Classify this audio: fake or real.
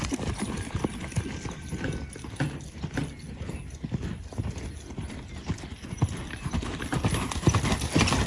real